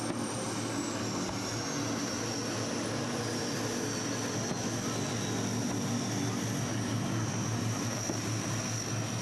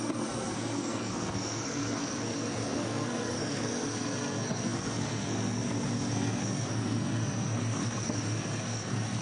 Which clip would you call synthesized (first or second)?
second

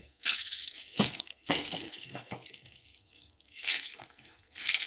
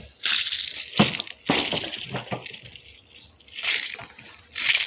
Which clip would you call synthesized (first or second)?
first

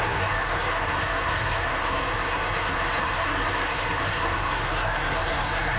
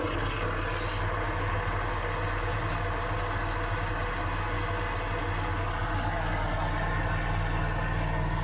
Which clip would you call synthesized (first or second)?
first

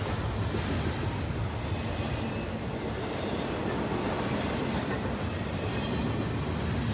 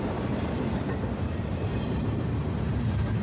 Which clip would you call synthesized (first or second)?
second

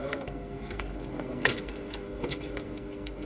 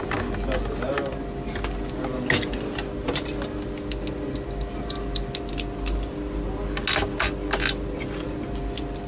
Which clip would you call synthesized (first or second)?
first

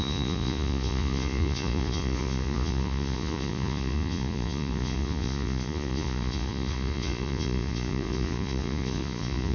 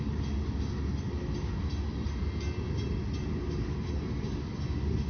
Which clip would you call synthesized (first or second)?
first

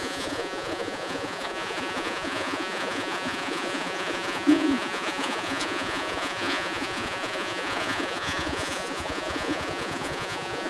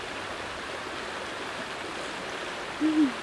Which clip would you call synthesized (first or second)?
first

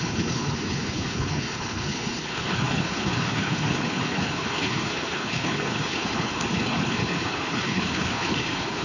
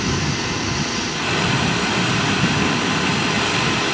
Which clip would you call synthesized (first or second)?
first